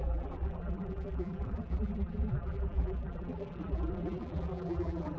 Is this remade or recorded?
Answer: remade